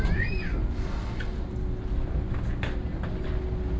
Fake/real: real